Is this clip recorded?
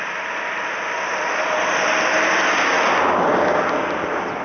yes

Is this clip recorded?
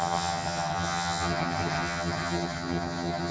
no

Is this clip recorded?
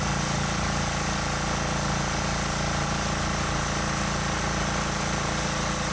yes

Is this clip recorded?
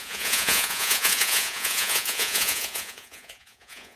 no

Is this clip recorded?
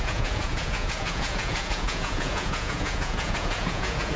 no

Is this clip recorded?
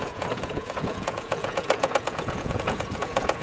no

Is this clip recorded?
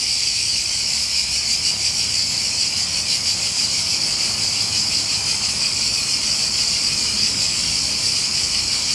no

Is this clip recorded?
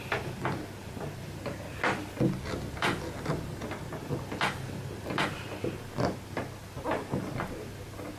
yes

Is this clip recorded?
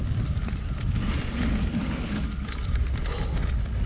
yes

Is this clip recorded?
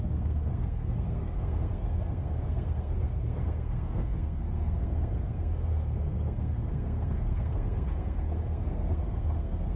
no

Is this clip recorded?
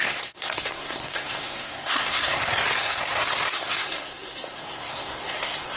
no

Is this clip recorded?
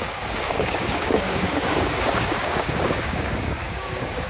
no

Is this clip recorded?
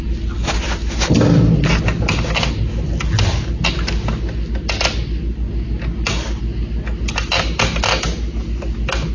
yes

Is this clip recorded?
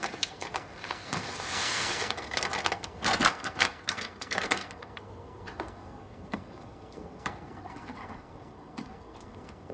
no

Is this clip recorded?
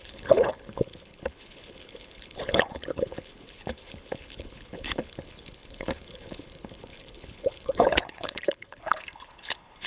no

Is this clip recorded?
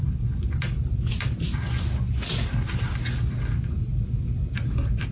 yes